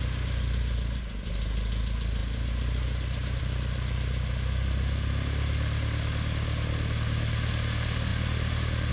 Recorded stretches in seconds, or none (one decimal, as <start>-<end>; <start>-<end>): 0.0-8.9